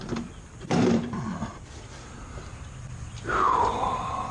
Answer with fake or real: fake